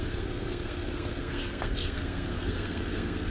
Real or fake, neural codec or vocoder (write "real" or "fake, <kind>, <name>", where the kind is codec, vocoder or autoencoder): fake, codec, SNAC